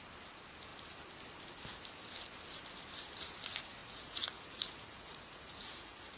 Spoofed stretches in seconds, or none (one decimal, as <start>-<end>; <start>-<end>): 3.8-6.2